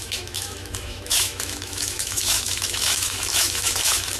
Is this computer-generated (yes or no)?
yes